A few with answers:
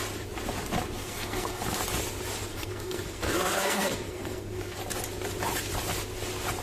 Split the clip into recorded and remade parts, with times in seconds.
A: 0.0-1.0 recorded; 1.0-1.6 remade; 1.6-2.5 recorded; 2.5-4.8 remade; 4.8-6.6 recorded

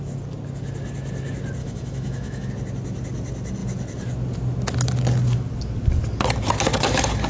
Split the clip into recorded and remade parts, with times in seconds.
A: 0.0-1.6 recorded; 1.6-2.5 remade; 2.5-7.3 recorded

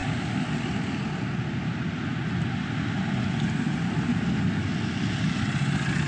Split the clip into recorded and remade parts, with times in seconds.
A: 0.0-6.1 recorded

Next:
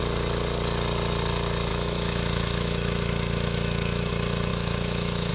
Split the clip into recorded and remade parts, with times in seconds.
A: 0.0-1.7 recorded; 1.7-4.1 remade; 4.1-4.5 recorded; 4.5-5.3 remade

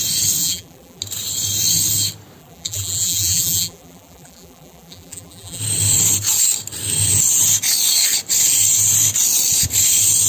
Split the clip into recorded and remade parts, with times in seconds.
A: 0.0-0.4 recorded; 0.4-1.0 remade; 1.0-2.4 recorded; 2.4-5.6 remade; 5.6-10.3 recorded